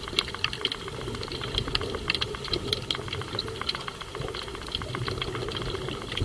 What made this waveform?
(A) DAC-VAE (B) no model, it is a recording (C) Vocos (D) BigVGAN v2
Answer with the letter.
B